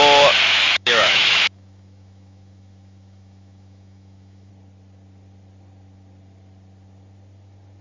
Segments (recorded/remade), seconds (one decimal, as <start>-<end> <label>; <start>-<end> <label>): 0.0-0.6 recorded; 0.6-4.5 remade; 4.5-7.8 recorded